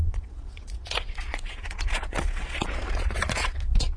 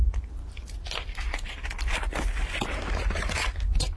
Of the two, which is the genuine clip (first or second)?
second